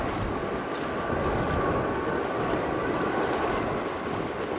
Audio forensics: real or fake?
real